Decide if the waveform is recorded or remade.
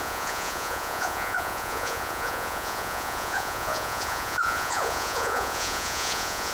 remade